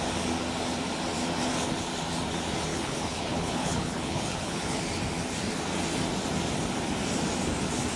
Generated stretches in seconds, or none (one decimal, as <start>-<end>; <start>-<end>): 2.7-4.8